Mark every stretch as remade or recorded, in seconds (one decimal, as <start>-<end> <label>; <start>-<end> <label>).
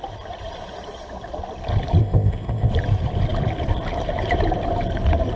0.0-2.0 recorded; 2.0-2.7 remade; 2.7-5.4 recorded